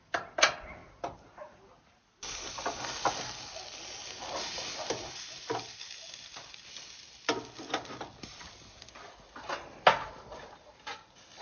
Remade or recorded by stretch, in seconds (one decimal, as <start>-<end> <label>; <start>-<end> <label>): 0.0-11.4 recorded